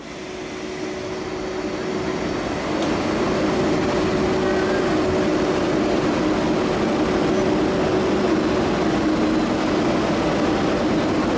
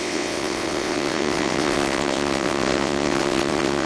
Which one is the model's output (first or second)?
second